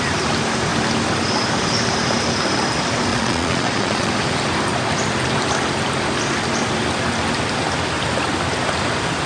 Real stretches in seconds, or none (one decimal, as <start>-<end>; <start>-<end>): 0.0-3.1; 4.1-9.3